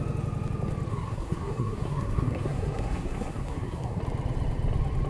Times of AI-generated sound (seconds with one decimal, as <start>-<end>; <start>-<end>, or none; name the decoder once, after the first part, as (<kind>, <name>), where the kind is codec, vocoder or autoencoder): 0.9-4.0 (codec, SNAC)